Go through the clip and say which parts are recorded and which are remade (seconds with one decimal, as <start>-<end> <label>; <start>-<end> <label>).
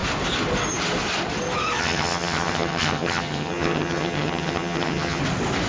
0.0-1.8 recorded; 1.8-5.2 remade; 5.2-5.7 recorded